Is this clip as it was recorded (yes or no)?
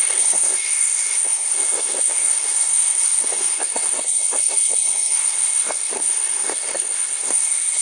no